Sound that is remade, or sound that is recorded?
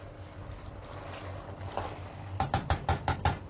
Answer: recorded